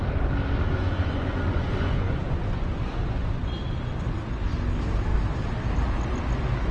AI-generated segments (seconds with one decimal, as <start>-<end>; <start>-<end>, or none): 0.7-3.4